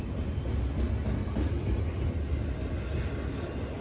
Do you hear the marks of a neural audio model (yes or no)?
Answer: no